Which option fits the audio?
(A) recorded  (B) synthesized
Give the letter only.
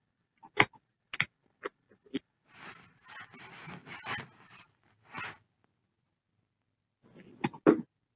A